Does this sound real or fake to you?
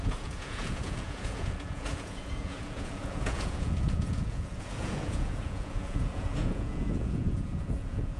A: fake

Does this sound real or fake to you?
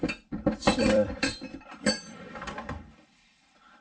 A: fake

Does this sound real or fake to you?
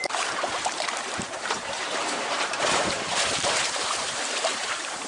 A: fake